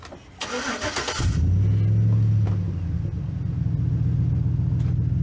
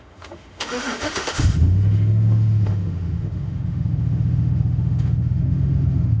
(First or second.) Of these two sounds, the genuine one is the first